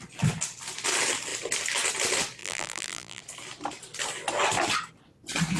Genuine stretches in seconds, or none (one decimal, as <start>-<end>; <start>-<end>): 0.0-2.4; 3.2-5.6